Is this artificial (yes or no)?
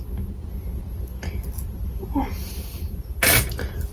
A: no